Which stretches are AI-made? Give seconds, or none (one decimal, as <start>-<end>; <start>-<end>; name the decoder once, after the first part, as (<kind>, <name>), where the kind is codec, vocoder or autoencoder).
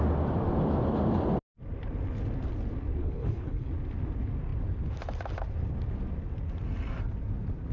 3.0-3.7 (codec, HILCodec)